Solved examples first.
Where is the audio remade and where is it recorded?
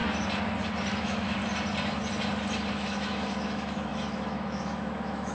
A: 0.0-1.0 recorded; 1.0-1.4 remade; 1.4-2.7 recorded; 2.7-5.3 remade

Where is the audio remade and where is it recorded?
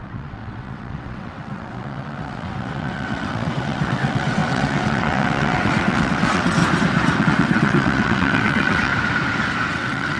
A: 0.0-6.6 remade; 6.6-7.2 recorded; 7.2-8.9 remade; 8.9-9.7 recorded; 9.7-10.2 remade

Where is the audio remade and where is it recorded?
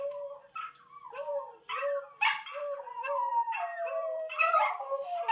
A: 0.0-3.7 recorded; 3.7-4.7 remade; 4.7-5.3 recorded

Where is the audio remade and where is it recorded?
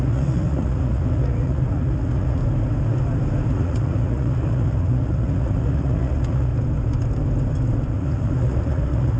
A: 0.0-2.4 remade; 2.4-3.5 recorded; 3.5-6.5 remade; 6.5-7.9 recorded; 7.9-9.2 remade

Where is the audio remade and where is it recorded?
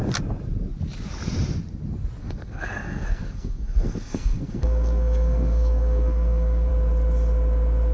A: 0.0-2.2 recorded; 2.2-6.7 remade; 6.7-7.9 recorded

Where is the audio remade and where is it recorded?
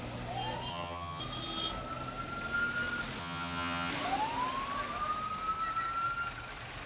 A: 0.0-0.7 recorded; 0.7-1.2 remade; 1.2-3.2 recorded; 3.2-3.9 remade; 3.9-6.9 recorded